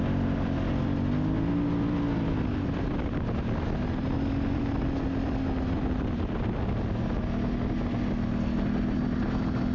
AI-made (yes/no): no